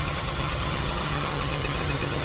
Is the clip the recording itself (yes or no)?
no